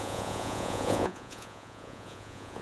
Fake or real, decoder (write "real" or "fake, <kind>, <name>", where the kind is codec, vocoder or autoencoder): fake, vocoder, Vocos